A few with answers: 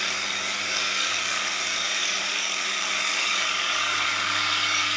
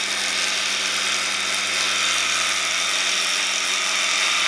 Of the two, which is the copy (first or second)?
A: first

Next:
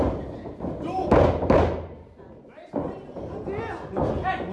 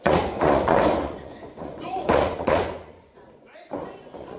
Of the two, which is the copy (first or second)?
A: second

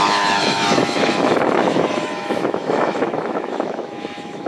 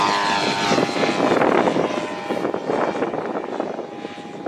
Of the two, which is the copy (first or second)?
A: first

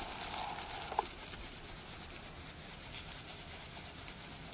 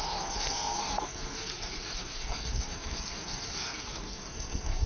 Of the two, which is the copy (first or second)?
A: second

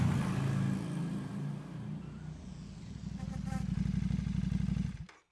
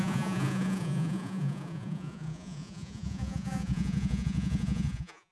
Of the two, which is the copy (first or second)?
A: second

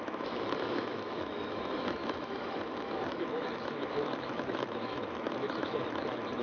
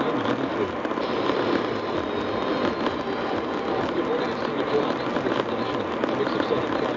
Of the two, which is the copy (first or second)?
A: first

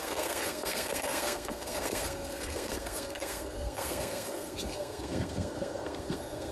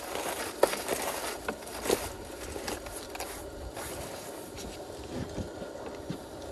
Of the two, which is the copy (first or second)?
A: first